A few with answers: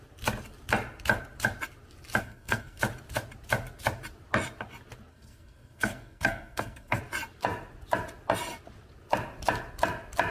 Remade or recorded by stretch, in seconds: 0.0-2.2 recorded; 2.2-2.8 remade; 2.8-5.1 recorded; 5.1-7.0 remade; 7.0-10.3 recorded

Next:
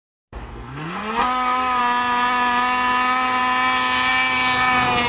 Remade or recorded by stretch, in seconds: 0.0-0.5 recorded; 0.5-1.8 remade; 1.8-5.1 recorded